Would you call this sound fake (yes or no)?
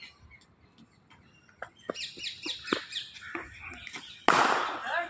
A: no